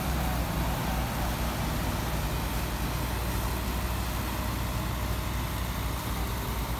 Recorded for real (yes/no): yes